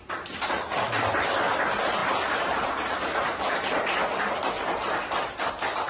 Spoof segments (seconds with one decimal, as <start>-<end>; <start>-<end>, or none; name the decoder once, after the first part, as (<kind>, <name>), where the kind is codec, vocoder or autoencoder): none